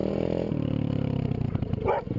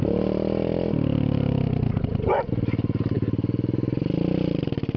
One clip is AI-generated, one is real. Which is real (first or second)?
second